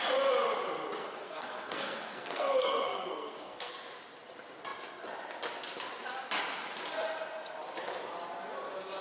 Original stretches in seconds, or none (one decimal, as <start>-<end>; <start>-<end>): 0.0-1.0; 3.7-9.0